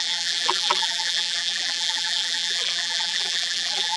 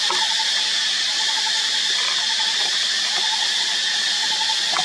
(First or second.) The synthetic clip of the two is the first